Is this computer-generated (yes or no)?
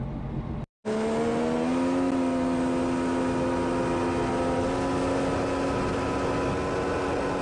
no